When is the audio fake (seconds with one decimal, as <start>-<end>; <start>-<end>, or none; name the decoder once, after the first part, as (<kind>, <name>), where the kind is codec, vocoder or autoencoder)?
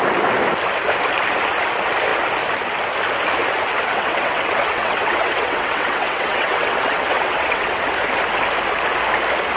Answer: 3.9-7.8 (vocoder, WaveNeXt)